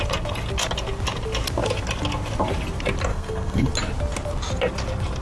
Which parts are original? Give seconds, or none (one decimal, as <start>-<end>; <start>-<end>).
0.0-3.1; 3.7-5.2